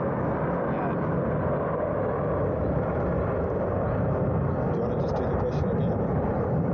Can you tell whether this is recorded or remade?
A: recorded